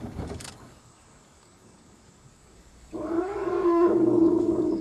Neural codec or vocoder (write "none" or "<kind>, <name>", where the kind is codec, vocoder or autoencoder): codec, DAC